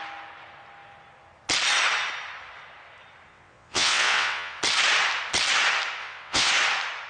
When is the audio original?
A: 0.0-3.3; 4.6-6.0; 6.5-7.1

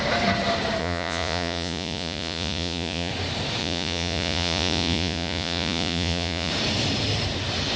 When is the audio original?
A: 0.0-0.8; 3.1-3.6; 6.5-7.8

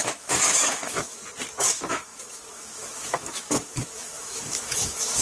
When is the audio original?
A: 1.2-1.7

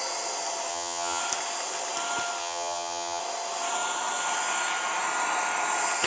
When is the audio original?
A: 0.0-0.7; 1.2-2.4; 3.2-6.1